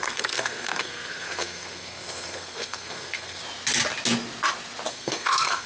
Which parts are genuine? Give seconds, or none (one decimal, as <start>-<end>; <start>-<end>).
3.4-4.9